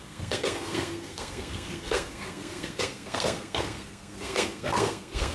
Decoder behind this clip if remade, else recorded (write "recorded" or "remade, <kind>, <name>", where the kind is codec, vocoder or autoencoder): remade, codec, SNAC